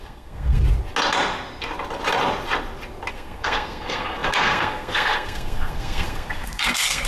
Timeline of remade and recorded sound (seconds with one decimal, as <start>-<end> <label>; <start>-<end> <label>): 0.0-0.6 remade; 0.6-3.1 recorded; 3.1-7.1 remade